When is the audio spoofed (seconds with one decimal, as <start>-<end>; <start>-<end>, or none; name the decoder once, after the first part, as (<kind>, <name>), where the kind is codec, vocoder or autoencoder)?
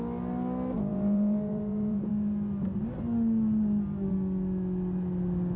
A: 0.9-2.1 (vocoder, Vocos)